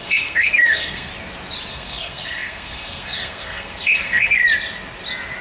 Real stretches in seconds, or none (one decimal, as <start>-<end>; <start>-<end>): 1.1-1.7; 4.4-5.4